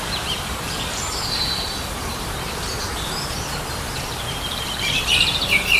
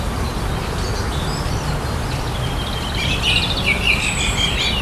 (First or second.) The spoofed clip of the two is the first